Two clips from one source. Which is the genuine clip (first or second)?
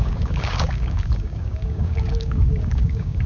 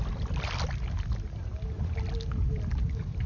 second